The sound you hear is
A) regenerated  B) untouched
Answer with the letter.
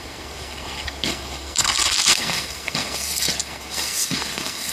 A